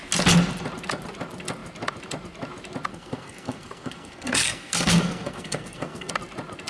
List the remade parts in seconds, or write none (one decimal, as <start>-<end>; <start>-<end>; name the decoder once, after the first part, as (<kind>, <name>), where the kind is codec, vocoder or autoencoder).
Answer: 2.9-6.1 (codec, SNAC)